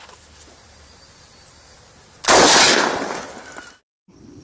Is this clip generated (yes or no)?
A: no